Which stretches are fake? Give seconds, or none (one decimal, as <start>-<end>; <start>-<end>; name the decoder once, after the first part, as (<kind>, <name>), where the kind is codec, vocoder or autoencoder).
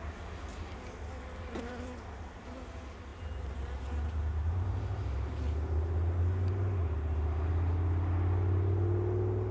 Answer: none